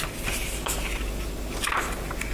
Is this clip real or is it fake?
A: real